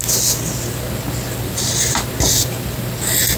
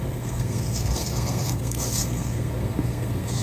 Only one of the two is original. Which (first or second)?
first